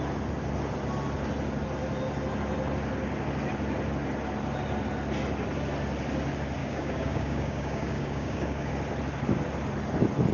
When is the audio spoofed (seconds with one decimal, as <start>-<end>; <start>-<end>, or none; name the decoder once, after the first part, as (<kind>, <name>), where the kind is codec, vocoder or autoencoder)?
6.6-8.7 (codec, DAC)